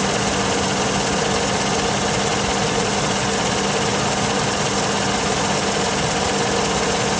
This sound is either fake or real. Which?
real